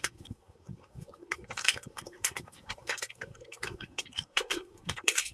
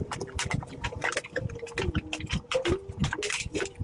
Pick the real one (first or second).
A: second